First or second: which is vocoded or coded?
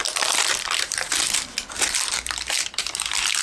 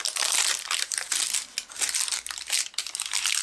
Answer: first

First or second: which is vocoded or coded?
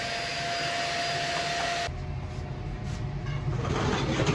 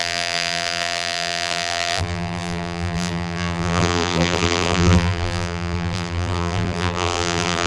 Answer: second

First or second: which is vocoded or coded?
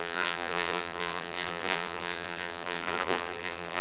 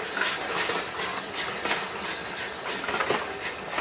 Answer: first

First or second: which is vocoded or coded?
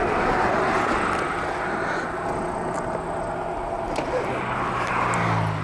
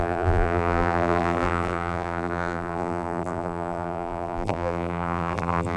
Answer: second